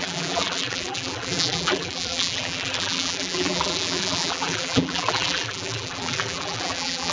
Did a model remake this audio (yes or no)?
yes